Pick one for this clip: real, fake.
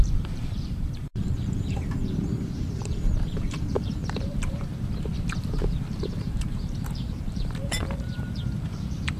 fake